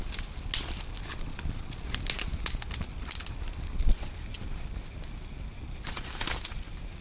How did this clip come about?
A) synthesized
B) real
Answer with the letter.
B